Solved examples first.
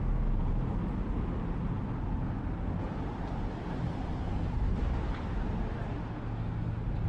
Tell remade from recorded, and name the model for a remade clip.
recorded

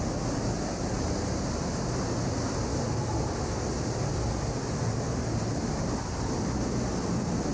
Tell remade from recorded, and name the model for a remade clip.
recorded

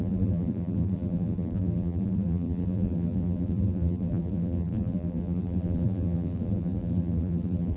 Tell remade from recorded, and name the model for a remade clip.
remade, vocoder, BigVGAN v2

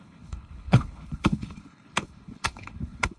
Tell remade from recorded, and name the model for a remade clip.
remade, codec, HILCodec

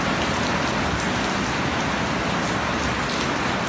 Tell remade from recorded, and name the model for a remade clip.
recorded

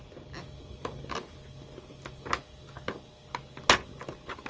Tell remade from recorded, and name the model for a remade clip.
recorded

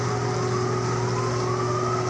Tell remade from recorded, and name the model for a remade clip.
recorded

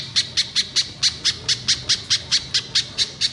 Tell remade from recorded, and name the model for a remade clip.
recorded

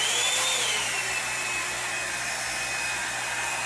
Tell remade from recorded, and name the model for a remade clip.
recorded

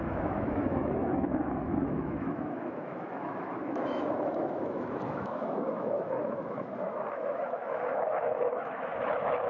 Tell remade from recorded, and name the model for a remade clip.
remade, autoencoder, DAC-VAE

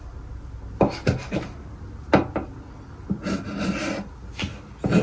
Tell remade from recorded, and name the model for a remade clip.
recorded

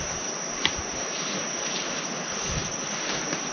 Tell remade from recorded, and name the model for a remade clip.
remade, vocoder, BigVGAN v2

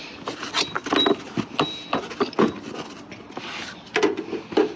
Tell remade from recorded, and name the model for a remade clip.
recorded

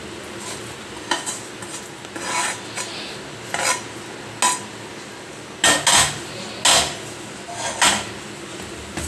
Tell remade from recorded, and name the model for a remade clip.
recorded